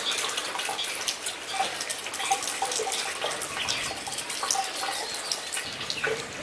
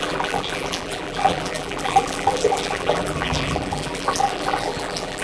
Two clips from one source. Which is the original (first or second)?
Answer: first